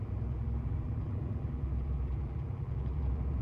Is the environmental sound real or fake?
fake